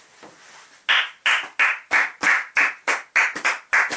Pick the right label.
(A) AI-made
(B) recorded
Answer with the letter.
B